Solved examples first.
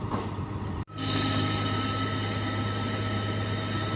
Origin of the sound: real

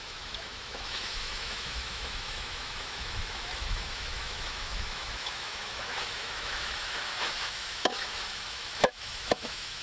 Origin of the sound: fake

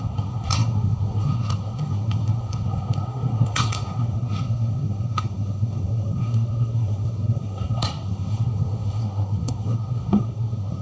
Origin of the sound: fake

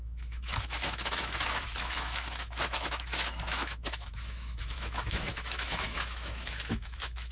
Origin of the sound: fake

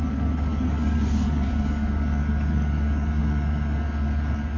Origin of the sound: fake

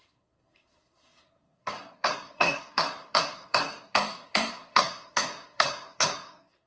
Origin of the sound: fake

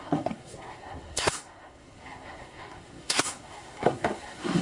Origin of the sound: fake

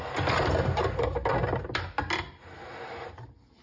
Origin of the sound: real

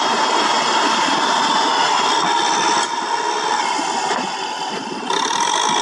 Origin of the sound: real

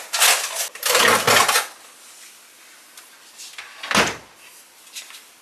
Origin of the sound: real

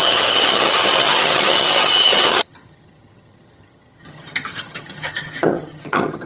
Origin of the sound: fake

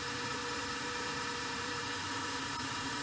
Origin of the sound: fake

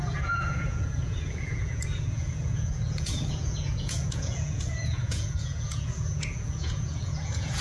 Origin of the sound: fake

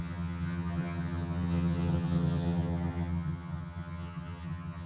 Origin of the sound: fake